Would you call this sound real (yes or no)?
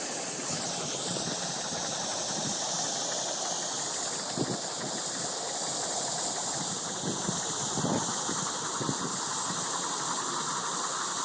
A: yes